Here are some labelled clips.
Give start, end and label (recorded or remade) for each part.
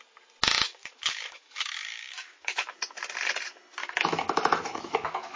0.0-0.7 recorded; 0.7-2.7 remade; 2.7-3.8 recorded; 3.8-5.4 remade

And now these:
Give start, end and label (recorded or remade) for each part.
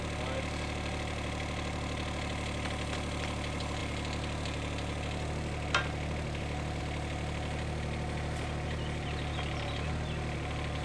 0.0-10.8 recorded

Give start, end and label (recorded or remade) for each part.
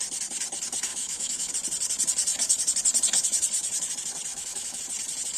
0.0-0.9 recorded; 0.9-1.5 remade; 1.5-4.3 recorded; 4.3-4.8 remade; 4.8-5.4 recorded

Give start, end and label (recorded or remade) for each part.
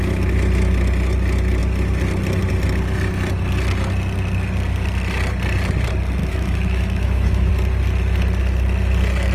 0.0-6.2 recorded; 6.2-7.5 remade; 7.5-9.3 recorded